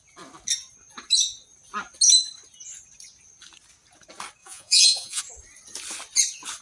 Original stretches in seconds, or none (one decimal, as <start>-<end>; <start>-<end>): 0.0-4.4; 5.2-6.6